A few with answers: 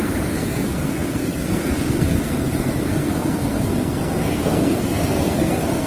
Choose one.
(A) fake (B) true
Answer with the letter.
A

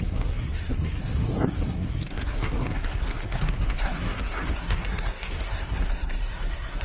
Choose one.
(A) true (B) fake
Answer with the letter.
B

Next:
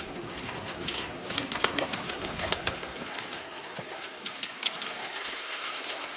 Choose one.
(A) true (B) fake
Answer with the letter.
B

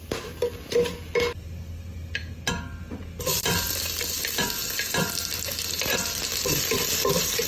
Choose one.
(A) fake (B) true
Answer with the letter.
B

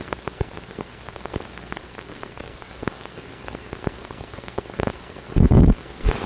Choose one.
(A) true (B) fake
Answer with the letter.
B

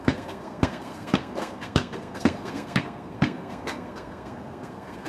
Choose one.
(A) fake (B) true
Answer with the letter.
A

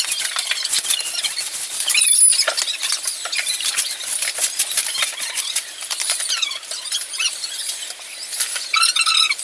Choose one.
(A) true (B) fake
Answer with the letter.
A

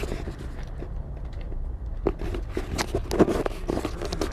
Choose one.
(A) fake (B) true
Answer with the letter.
B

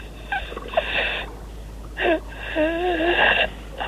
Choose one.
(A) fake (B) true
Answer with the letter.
B